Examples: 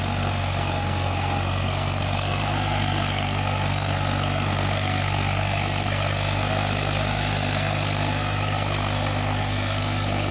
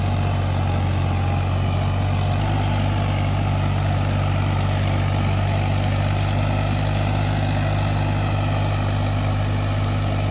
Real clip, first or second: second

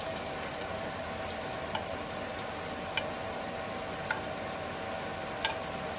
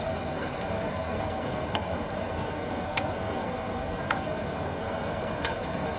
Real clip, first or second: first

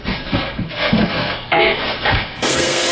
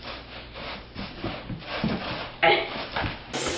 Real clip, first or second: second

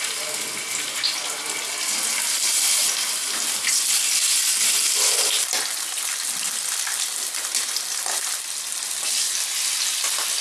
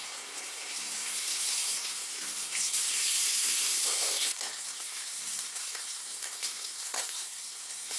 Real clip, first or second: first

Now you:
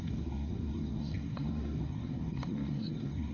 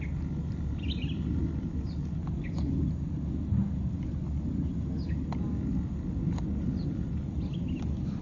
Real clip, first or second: second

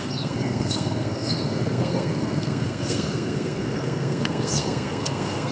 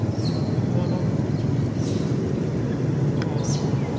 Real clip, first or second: second